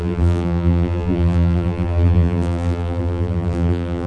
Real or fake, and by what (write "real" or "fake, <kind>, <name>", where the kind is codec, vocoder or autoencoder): fake, vocoder, BigVGAN v2